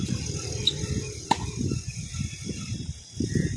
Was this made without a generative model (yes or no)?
no